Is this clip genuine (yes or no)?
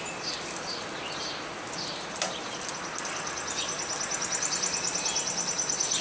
yes